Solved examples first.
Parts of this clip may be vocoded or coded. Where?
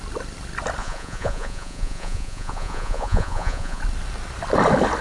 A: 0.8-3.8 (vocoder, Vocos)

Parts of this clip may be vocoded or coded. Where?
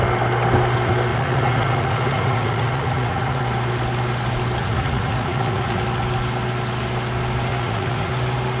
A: 1.1-3.4 (vocoder, Vocos); 4.6-5.8; 7.5-8.1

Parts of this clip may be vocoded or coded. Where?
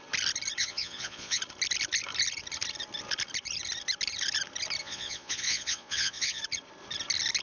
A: 0.6-1.4 (vocoder, Vocos); 4.8-6.4